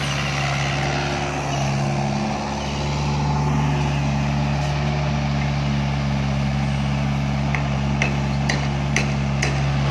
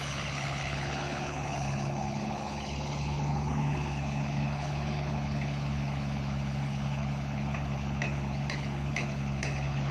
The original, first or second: first